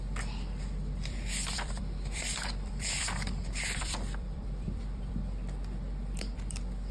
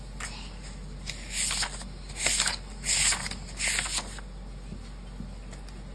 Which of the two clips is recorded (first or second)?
second